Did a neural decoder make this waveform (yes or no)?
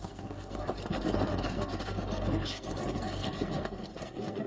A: yes